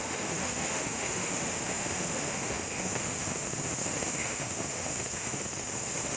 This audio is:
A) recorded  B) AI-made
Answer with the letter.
B